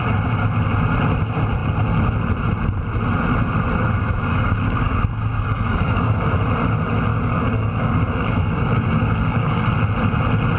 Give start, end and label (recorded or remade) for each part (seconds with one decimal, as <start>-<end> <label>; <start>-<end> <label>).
0.0-4.0 recorded; 4.0-6.4 remade; 6.4-7.1 recorded; 7.1-9.7 remade; 9.7-10.6 recorded